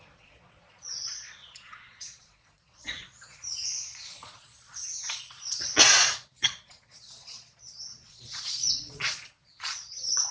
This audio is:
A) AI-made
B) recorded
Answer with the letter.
A